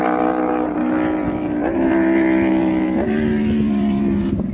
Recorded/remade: remade